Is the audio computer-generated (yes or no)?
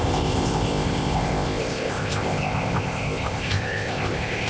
yes